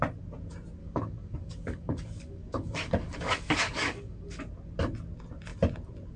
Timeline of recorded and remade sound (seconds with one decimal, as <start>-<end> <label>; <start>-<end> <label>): 0.0-0.8 recorded; 0.8-4.4 remade; 4.4-6.2 recorded